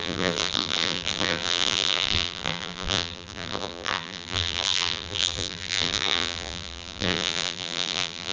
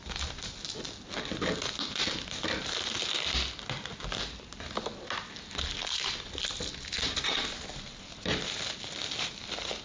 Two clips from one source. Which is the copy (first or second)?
first